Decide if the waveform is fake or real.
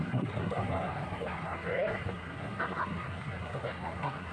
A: fake